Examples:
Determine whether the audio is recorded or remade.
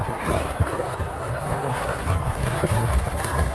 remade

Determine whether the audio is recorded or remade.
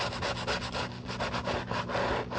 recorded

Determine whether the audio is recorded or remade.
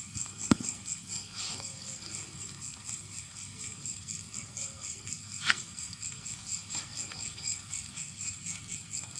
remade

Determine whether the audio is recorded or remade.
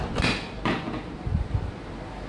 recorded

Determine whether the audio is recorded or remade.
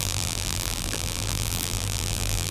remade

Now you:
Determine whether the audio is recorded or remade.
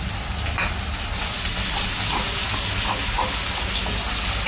recorded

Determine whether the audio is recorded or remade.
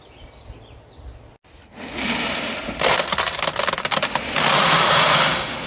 recorded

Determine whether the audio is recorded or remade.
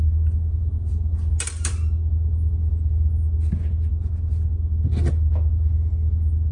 recorded